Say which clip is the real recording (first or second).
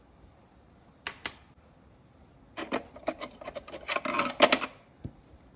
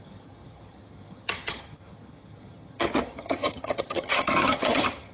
first